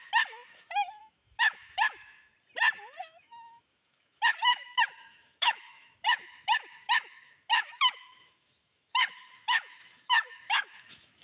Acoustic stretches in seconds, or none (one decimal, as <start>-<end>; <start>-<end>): 2.3-3.0